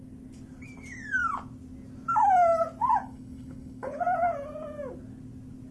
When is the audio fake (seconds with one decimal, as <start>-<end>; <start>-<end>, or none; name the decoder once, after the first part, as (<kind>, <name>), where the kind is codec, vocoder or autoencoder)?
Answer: 3.0-4.0 (codec, HILCodec)